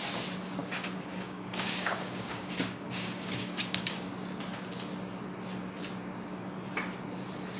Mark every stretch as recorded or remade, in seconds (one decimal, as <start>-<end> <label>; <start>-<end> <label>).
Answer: 0.0-0.6 recorded; 0.6-4.1 remade; 4.1-7.6 recorded